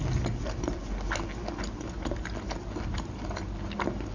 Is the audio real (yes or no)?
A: yes